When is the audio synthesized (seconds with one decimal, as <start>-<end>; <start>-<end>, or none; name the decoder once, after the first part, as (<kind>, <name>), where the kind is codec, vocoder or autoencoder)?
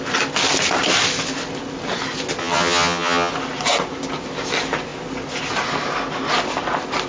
2.4-3.3 (vocoder, HiFi-GAN)